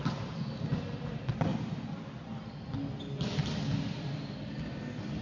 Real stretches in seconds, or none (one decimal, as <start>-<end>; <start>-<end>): 0.0-5.2